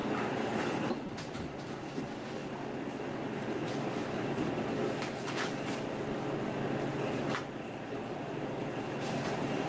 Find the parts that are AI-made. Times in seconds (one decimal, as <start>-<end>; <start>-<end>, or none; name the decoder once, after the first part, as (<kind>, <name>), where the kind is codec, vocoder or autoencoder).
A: 0.6-2.4 (vocoder, BigVGAN v2); 3.0-4.0; 7.4-9.7